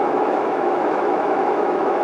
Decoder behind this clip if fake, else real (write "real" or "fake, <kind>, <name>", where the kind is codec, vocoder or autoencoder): fake, autoencoder, DAC-VAE